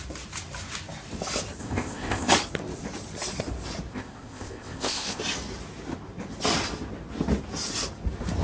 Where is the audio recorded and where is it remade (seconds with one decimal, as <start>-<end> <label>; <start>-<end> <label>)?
0.0-1.6 recorded; 1.6-2.3 remade; 2.3-3.9 recorded; 3.9-5.2 remade; 5.2-8.4 recorded